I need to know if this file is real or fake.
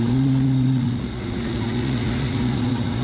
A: fake